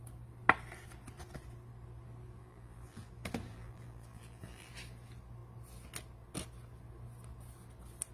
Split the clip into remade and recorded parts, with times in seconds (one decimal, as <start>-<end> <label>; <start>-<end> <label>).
0.0-2.4 recorded; 2.4-3.1 remade; 3.1-3.5 recorded; 3.5-4.7 remade; 4.7-8.1 recorded